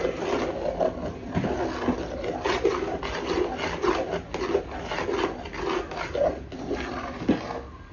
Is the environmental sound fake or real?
real